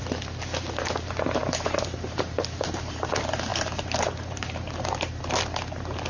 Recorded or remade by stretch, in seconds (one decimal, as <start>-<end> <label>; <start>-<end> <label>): 0.0-1.4 recorded; 1.4-3.1 remade; 3.1-3.5 recorded; 3.5-5.2 remade; 5.2-6.1 recorded